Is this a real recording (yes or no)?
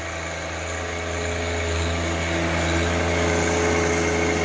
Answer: yes